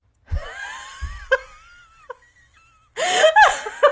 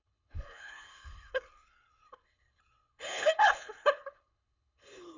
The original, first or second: first